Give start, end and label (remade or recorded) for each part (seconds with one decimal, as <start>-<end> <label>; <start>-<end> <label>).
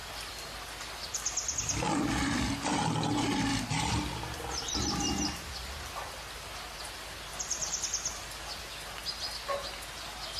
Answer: 0.0-10.4 recorded